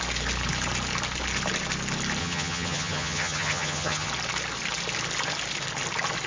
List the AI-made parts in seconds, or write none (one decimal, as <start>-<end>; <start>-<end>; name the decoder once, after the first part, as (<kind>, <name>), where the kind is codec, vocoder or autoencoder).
2.2-4.1 (vocoder, HiFi-GAN)